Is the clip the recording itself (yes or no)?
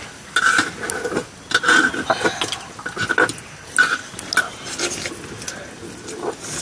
yes